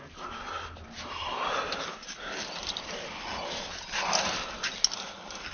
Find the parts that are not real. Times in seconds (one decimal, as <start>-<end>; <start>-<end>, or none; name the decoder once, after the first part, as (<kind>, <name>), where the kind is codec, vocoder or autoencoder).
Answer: none